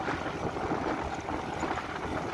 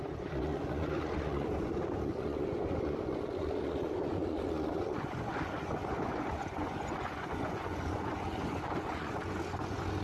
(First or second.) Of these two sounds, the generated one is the second